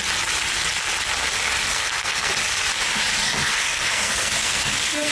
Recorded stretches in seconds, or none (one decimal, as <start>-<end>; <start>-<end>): 0.0-1.7; 2.3-3.1